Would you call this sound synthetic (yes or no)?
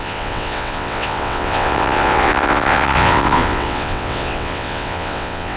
yes